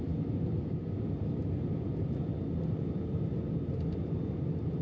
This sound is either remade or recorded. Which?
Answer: recorded